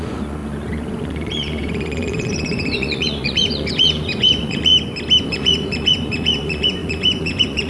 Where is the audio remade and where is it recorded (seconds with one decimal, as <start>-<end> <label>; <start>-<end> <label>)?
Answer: 0.0-4.7 remade; 4.7-5.2 recorded; 5.2-7.7 remade